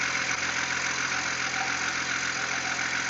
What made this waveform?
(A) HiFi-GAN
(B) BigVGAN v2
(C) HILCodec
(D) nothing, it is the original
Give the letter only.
D